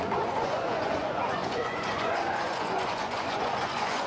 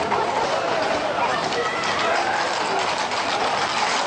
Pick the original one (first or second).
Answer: second